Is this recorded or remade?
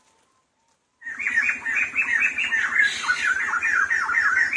recorded